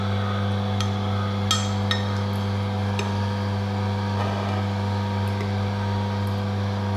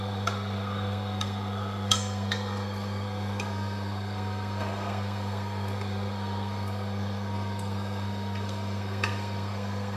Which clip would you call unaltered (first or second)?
first